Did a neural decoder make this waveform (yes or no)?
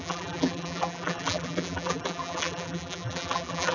yes